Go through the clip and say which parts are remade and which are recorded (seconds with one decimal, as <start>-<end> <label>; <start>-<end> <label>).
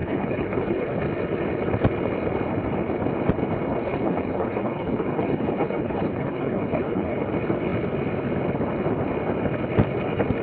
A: 0.0-1.0 remade; 1.0-3.8 recorded; 3.8-7.3 remade; 7.3-10.4 recorded